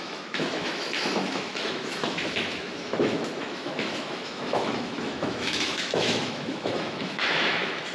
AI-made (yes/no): yes